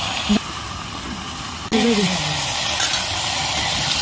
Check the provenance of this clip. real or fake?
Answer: real